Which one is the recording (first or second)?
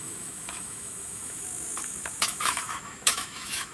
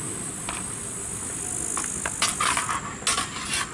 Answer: second